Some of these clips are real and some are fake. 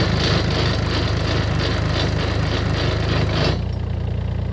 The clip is real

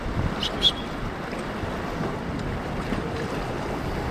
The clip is real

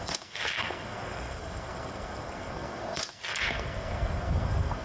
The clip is fake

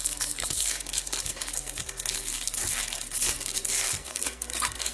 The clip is fake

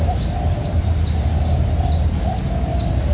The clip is real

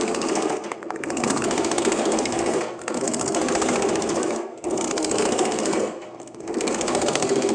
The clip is fake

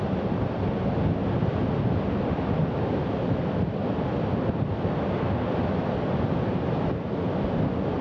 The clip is real